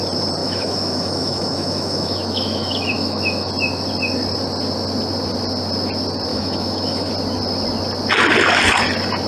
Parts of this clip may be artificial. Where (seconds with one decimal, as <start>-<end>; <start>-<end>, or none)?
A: 0.4-3.5; 6.3-7.1